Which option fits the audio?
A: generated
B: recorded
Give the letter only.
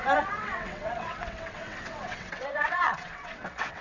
A